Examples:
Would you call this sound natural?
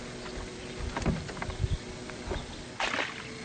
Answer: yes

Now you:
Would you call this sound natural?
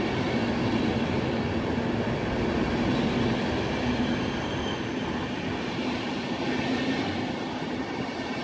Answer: yes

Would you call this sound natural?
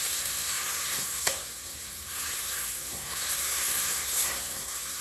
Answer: no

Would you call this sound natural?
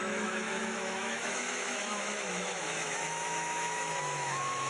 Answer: no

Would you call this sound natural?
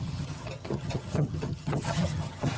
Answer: no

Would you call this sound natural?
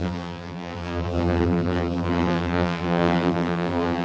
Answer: no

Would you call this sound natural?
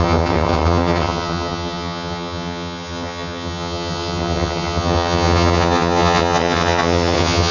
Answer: no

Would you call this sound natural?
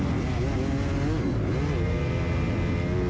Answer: yes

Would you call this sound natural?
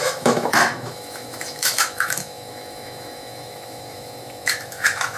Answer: no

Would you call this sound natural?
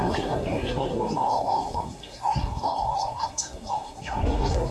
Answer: no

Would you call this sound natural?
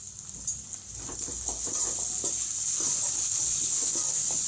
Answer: yes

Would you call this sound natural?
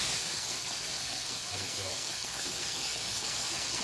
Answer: no